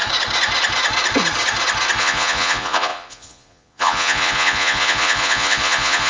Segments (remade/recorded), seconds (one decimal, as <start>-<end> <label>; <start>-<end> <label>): 0.0-2.0 recorded; 2.0-6.1 remade